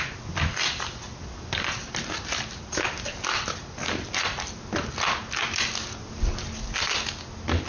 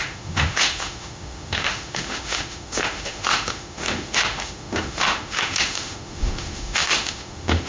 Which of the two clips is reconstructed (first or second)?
second